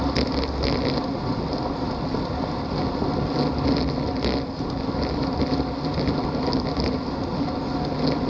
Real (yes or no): yes